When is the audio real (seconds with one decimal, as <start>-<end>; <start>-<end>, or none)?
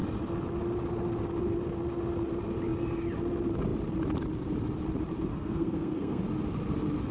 0.0-5.3; 6.2-7.1